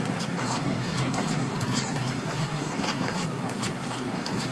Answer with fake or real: fake